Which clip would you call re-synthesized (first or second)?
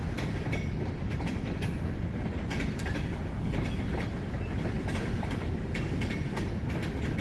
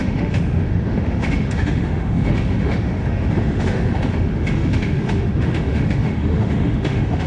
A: second